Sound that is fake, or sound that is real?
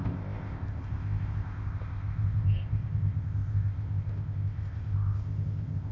fake